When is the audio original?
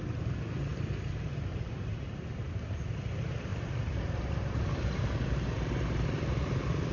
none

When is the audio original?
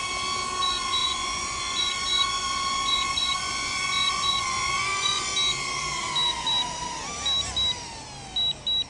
0.0-0.6; 5.3-8.9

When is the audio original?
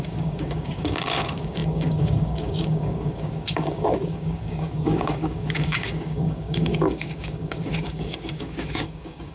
none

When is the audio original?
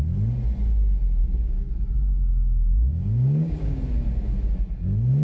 0.0-1.2; 1.7-2.3; 3.8-5.2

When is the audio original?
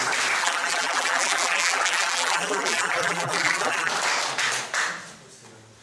0.0-0.4; 3.9-5.8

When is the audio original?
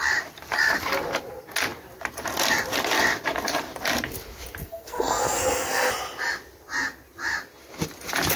0.0-4.6; 5.9-8.4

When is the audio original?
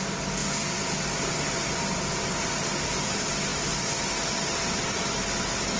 0.0-5.8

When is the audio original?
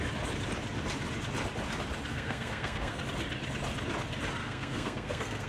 0.0-2.1; 3.0-4.4